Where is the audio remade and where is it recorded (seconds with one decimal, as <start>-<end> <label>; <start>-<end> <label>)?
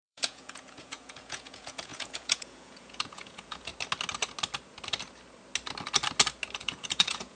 0.0-3.7 remade; 3.7-6.6 recorded; 6.6-7.4 remade